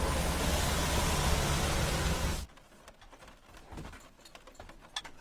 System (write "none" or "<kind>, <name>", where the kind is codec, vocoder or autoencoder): none